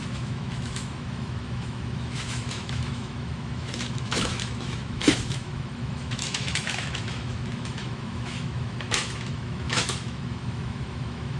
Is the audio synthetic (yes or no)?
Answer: yes